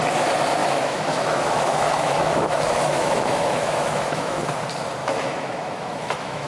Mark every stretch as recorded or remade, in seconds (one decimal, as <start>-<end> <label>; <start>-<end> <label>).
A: 0.0-0.6 recorded; 0.6-4.5 remade; 4.5-5.0 recorded; 5.0-6.5 remade